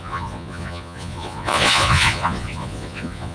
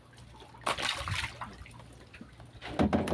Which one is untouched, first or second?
second